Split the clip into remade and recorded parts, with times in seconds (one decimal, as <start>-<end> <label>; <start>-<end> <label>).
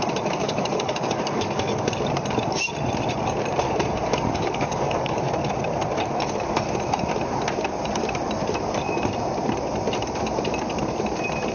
0.0-0.4 recorded; 0.4-1.9 remade; 1.9-4.1 recorded; 4.1-5.3 remade; 5.3-11.5 recorded